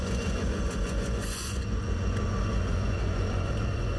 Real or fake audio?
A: fake